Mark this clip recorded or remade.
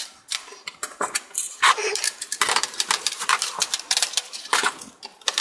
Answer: remade